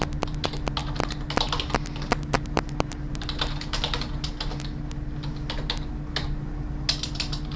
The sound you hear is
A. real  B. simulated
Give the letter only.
A